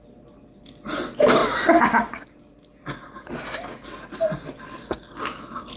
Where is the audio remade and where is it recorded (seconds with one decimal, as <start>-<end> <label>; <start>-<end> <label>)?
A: 0.0-5.8 recorded